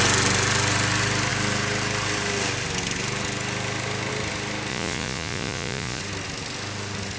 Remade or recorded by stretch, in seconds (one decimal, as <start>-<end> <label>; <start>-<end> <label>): 0.0-4.7 recorded; 4.7-6.0 remade; 6.0-7.2 recorded